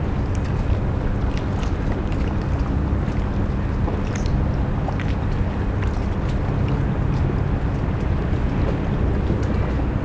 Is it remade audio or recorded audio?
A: recorded